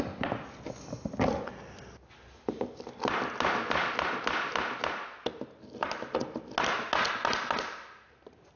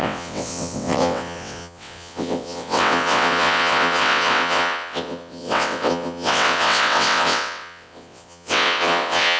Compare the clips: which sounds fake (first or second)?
second